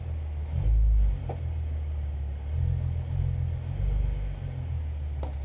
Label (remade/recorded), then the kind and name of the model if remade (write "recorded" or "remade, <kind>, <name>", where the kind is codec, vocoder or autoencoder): recorded